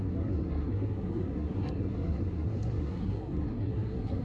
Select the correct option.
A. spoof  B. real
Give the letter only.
A